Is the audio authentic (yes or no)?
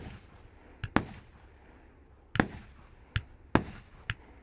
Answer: yes